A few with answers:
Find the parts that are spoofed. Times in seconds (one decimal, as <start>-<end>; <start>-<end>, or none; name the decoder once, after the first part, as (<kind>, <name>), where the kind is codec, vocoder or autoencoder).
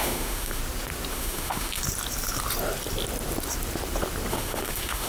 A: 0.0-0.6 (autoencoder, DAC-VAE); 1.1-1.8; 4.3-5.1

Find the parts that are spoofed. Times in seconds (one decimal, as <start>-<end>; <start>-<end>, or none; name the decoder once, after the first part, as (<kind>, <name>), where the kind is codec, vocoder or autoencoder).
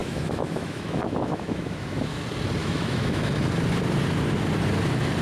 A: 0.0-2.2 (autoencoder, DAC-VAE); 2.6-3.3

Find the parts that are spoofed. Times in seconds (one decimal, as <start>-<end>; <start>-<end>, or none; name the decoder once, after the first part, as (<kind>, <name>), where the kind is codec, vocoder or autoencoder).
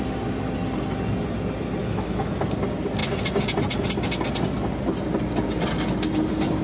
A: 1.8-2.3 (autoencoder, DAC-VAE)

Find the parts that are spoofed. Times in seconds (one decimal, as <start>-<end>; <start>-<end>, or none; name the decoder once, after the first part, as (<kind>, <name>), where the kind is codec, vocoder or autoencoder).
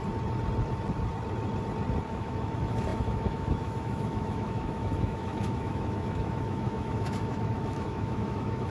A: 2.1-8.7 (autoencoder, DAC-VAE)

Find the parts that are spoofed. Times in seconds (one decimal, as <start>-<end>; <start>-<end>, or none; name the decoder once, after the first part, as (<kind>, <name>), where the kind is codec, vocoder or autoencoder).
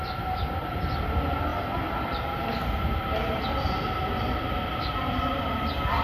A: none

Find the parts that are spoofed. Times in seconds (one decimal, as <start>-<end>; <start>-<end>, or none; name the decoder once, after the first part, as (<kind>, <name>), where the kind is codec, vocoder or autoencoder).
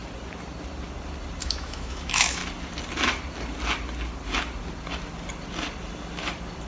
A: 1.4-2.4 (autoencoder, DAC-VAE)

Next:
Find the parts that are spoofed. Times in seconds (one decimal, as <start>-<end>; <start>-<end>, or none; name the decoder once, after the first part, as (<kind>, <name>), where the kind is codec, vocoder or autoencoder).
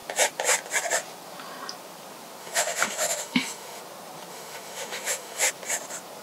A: 2.4-3.8 (autoencoder, DAC-VAE); 4.3-5.5